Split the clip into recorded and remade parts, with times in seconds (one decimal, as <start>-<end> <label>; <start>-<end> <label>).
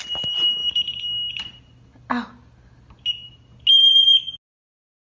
0.0-5.1 recorded